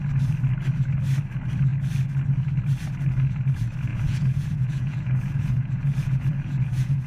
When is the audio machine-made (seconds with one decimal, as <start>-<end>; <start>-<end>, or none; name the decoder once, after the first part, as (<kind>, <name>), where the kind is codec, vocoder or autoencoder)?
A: 3.9-7.1 (vocoder, Vocos)